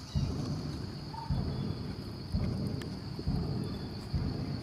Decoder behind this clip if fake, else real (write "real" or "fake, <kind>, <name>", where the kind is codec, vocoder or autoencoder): real